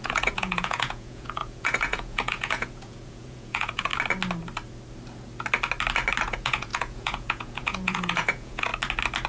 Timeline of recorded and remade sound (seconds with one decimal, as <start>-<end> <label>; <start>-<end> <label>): 0.0-3.9 remade; 3.9-6.2 recorded; 6.2-8.7 remade; 8.7-9.3 recorded